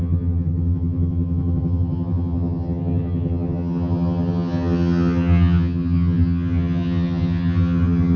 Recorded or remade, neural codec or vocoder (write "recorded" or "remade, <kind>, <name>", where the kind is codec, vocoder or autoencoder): remade, vocoder, HiFi-GAN